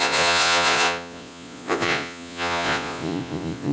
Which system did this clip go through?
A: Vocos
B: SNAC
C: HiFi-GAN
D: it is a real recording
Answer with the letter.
A